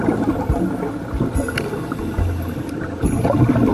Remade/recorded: recorded